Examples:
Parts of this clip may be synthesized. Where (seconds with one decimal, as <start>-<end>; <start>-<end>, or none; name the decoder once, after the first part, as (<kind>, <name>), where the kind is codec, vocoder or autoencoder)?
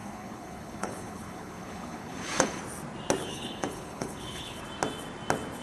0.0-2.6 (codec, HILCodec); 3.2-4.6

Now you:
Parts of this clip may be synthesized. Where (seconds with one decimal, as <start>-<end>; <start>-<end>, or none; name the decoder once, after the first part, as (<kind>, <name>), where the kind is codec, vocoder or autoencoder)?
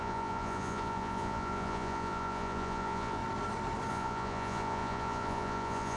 0.0-3.2 (vocoder, Vocos); 3.9-6.0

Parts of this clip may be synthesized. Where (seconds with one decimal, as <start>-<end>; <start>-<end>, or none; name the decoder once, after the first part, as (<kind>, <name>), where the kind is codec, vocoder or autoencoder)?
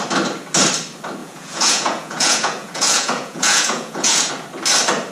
1.2-4.3 (vocoder, Vocos)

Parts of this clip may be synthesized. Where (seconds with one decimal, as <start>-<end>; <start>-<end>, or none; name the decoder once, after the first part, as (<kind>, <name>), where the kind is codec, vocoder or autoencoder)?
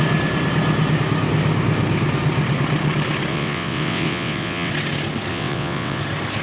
3.3-4.7 (vocoder, WaveNeXt); 5.3-6.0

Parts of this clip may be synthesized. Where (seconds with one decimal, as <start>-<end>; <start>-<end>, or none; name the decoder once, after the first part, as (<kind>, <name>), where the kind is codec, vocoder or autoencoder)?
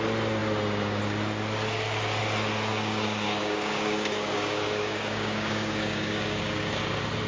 2.7-6.7 (codec, DAC)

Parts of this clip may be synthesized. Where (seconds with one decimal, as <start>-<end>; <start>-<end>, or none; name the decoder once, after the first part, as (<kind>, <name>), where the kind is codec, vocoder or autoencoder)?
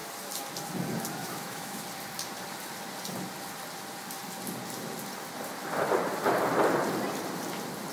1.2-1.8 (autoencoder, DAC-VAE)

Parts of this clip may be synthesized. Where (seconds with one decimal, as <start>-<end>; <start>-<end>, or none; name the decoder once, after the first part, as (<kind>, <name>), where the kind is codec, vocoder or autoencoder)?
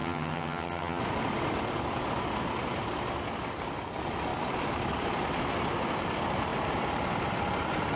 0.0-1.0 (vocoder, HiFi-GAN)